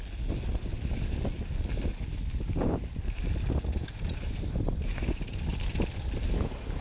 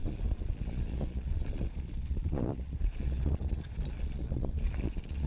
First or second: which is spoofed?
second